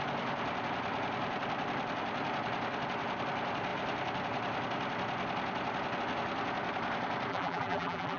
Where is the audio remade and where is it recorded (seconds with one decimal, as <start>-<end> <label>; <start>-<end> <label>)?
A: 0.0-7.3 recorded; 7.3-8.2 remade